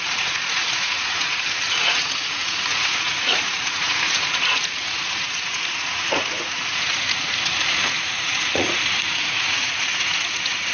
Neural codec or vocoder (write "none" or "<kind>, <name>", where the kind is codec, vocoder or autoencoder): vocoder, Vocos